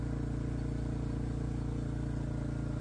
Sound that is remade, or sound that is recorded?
recorded